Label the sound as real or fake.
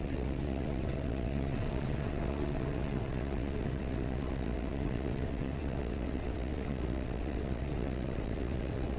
fake